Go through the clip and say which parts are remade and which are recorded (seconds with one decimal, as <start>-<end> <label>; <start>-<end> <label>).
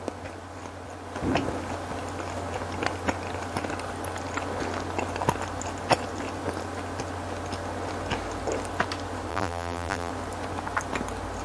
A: 0.0-9.3 recorded; 9.3-10.1 remade; 10.1-11.4 recorded